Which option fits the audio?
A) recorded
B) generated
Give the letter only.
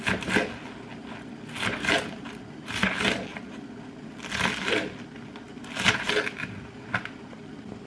A